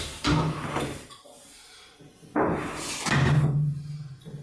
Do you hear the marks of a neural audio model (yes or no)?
no